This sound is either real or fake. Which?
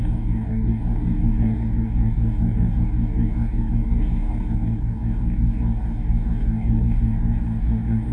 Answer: fake